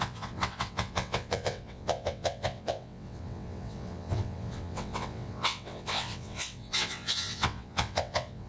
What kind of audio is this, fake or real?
fake